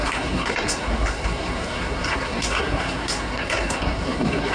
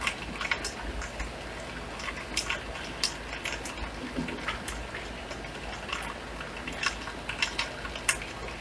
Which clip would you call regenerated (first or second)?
first